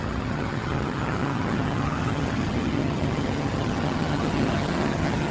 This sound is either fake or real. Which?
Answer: fake